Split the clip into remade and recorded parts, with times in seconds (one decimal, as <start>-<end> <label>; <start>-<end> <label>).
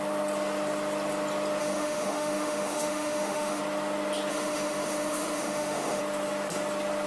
0.0-1.6 recorded; 1.6-3.6 remade; 3.6-4.3 recorded; 4.3-6.0 remade; 6.0-7.1 recorded